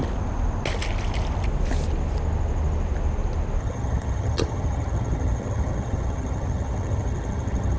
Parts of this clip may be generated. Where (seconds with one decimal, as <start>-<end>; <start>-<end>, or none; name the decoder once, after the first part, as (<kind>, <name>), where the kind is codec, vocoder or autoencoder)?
3.6-7.8 (vocoder, HiFi-GAN)